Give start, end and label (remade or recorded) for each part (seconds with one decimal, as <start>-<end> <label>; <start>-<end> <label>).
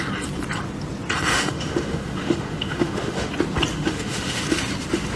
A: 0.0-1.3 recorded; 1.3-3.3 remade; 3.3-3.7 recorded; 3.7-4.4 remade; 4.4-5.2 recorded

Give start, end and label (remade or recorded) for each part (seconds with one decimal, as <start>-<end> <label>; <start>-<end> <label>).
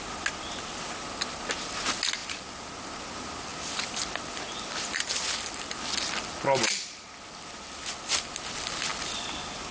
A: 0.0-9.7 recorded